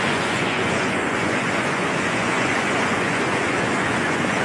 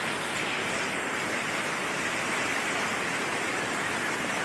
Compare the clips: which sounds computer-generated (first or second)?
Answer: first